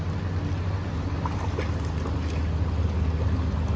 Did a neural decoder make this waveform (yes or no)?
no